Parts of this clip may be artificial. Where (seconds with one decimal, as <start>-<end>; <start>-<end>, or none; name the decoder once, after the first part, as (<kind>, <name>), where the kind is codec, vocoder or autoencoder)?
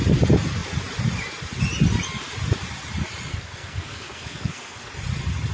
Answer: 3.3-4.9 (codec, SNAC)